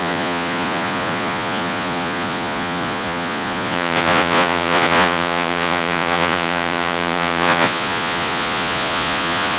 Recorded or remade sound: remade